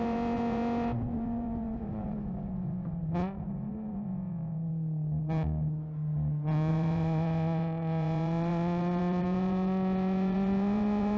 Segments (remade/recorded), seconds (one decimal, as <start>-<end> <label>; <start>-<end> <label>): 0.0-4.7 remade; 4.7-6.7 recorded; 6.7-11.2 remade